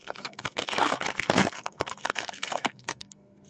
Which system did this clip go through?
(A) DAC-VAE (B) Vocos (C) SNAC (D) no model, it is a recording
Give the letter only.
C